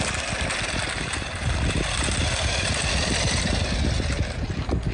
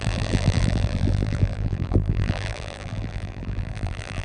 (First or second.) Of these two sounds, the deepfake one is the second